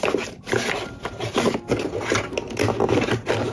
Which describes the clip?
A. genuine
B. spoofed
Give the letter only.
A